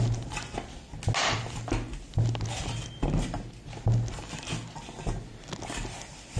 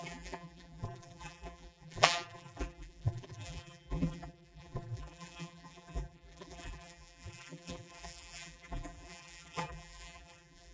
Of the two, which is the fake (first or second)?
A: second